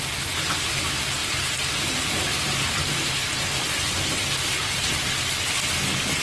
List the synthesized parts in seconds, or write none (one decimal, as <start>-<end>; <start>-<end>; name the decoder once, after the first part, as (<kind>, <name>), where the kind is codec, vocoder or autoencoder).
1.2-4.9 (vocoder, BigVGAN v2)